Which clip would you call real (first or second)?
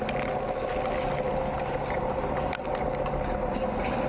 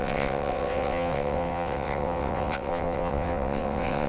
first